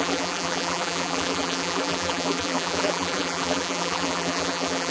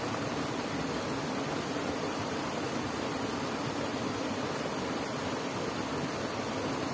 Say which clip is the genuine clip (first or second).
second